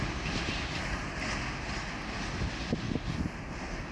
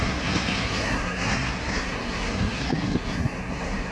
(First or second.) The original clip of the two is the first